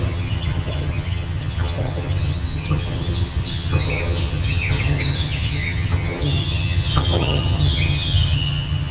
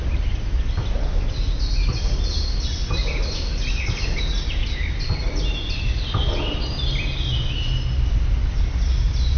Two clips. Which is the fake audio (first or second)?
first